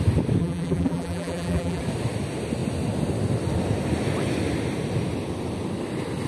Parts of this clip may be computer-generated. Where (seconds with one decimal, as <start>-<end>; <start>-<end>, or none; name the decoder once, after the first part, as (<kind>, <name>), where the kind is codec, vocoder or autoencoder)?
0.4-1.8 (vocoder, BigVGAN v2)